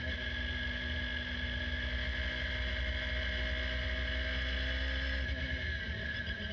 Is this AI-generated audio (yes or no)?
no